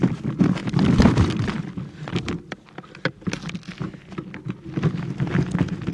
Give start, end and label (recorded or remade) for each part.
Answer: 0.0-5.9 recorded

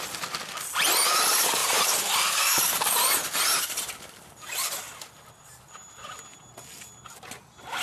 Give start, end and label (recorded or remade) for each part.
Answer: 0.0-1.6 recorded; 1.6-6.2 remade; 6.2-7.8 recorded

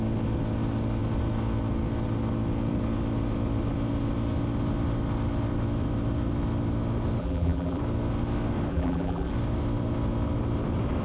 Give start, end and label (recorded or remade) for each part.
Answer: 0.0-7.2 recorded; 7.2-7.8 remade; 7.8-8.7 recorded; 8.7-9.3 remade; 9.3-11.0 recorded

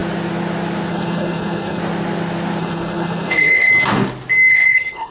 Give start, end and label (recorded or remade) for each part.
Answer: 0.0-0.9 recorded; 0.9-1.8 remade; 1.8-2.6 recorded; 2.6-3.7 remade; 3.7-4.5 recorded; 4.5-5.1 remade

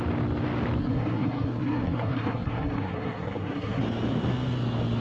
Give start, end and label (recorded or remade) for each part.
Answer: 0.0-0.8 recorded; 0.8-3.8 remade; 3.8-5.0 recorded